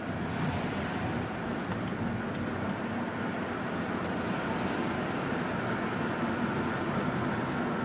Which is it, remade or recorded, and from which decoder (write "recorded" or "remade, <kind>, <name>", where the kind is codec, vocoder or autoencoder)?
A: recorded